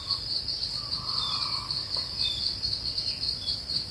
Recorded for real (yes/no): no